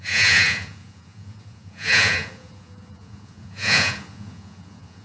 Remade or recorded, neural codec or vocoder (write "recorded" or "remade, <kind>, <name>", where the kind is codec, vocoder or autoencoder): remade, vocoder, Vocos